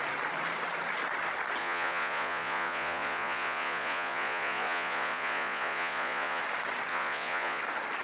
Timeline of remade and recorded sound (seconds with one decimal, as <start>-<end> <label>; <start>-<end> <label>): 0.0-1.6 recorded; 1.6-6.4 remade; 6.4-6.9 recorded; 6.9-7.6 remade; 7.6-8.0 recorded